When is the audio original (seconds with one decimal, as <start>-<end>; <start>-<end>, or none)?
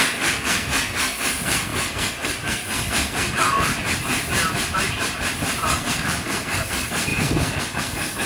3.7-5.7